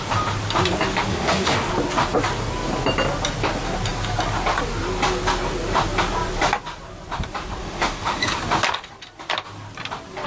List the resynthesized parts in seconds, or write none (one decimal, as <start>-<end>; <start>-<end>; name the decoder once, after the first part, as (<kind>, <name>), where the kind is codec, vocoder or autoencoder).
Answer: 1.1-1.7 (autoencoder, DAC-VAE); 7.6-8.4

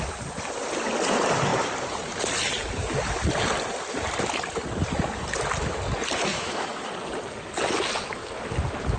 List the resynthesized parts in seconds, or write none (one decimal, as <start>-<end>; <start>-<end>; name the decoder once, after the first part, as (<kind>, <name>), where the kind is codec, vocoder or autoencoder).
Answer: 6.3-6.9 (autoencoder, DAC-VAE)